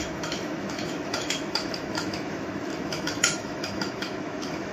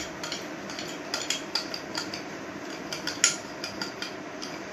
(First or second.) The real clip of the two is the second